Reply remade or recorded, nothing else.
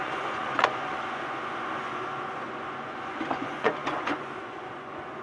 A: remade